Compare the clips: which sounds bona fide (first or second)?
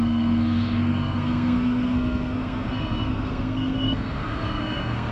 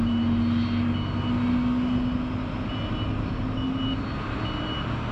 second